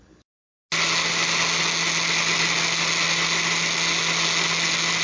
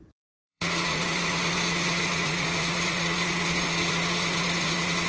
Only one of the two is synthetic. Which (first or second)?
second